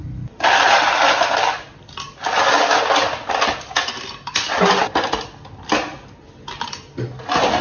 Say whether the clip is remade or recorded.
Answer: recorded